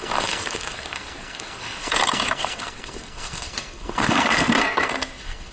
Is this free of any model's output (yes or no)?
no